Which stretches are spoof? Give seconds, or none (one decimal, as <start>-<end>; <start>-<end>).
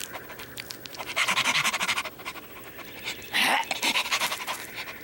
none